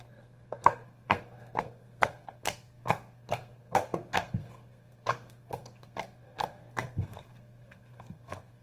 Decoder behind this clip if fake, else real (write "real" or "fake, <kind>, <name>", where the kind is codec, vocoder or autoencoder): fake, codec, SNAC